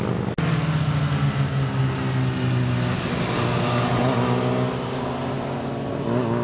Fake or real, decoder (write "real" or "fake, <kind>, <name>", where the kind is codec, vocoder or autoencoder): real